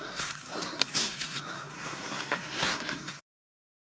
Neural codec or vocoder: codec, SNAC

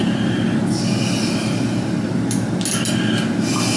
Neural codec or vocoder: none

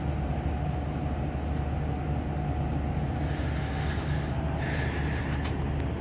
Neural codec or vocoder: none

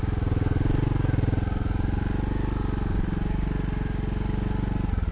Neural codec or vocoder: none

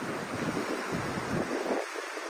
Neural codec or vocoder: none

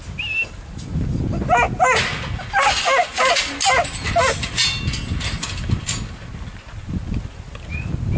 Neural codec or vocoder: none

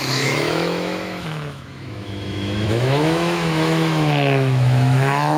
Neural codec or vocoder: autoencoder, DAC-VAE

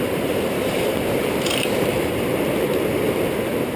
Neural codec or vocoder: vocoder, BigVGAN v2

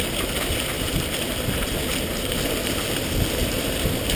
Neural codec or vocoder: none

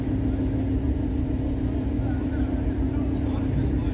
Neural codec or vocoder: none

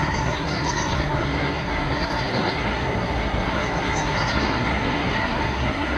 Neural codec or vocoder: codec, SNAC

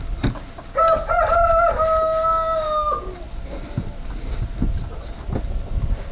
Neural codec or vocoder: none